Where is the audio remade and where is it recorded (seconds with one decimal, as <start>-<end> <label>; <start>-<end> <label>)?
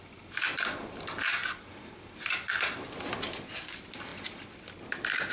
0.0-5.3 recorded